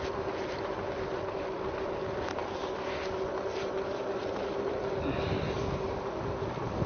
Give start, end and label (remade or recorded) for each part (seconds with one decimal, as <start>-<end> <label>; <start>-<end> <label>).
0.0-6.9 recorded